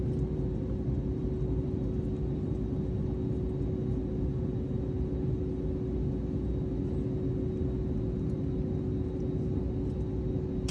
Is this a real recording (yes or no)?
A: yes